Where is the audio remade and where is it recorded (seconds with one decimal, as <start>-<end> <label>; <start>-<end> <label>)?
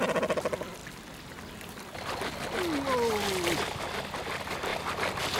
0.0-5.4 recorded